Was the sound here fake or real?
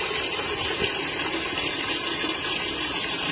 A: fake